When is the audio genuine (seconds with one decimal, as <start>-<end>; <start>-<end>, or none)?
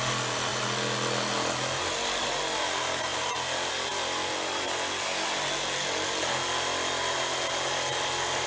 0.0-8.5